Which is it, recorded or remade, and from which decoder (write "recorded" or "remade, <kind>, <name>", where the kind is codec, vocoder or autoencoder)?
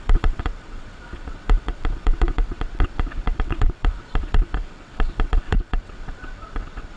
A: remade, vocoder, WaveNeXt